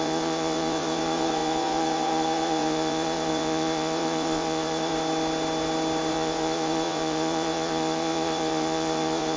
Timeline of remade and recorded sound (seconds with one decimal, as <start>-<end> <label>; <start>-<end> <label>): 0.0-4.9 remade; 4.9-6.1 recorded; 6.1-9.4 remade